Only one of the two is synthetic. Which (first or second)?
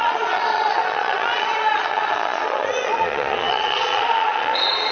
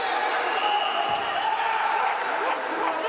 first